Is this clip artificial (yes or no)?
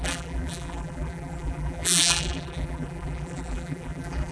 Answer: yes